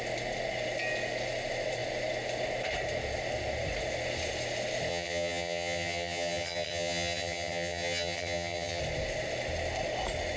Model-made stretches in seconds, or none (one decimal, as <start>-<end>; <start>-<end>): 4.9-8.8

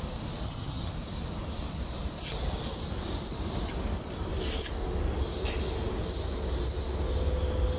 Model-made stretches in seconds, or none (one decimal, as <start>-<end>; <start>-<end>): 0.4-0.9